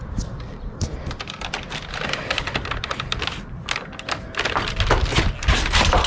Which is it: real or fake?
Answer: real